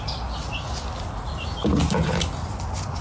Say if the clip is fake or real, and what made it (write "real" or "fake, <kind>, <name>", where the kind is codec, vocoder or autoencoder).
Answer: real